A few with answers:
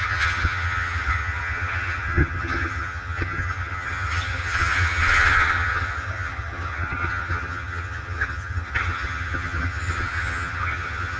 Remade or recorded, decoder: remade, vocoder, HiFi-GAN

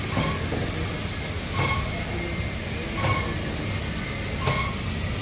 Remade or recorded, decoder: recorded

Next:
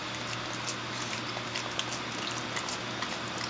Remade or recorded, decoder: recorded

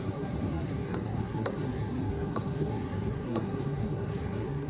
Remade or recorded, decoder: remade, codec, SNAC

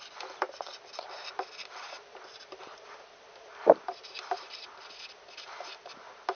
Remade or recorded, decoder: recorded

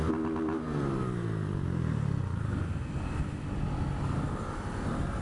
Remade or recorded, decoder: recorded